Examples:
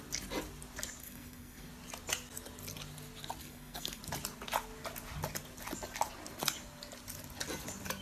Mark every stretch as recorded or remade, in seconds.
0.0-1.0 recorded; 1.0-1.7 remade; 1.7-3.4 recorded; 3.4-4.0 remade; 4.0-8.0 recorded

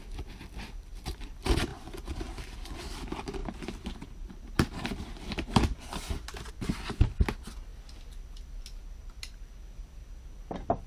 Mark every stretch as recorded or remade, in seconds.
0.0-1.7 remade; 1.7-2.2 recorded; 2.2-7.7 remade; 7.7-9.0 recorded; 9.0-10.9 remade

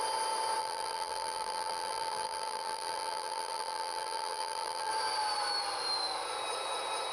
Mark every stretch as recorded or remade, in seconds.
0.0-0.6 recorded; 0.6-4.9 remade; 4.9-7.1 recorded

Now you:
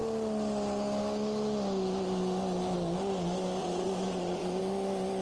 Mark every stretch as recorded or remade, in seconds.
0.0-3.6 recorded; 3.6-4.6 remade; 4.6-5.2 recorded

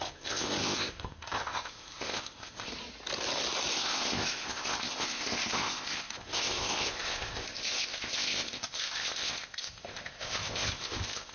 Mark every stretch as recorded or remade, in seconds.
0.0-2.7 remade; 2.7-3.7 recorded; 3.7-11.3 remade

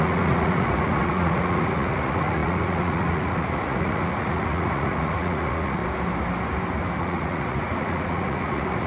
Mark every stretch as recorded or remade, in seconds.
0.0-5.8 remade; 5.8-7.0 recorded; 7.0-8.9 remade

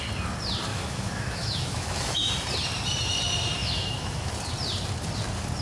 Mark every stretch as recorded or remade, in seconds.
0.0-0.7 recorded; 0.7-2.3 remade; 2.3-3.6 recorded; 3.6-4.3 remade; 4.3-5.6 recorded